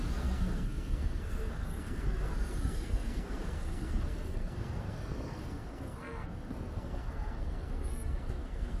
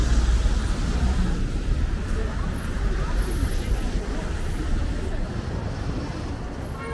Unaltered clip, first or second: second